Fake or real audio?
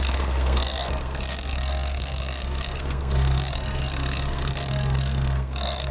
fake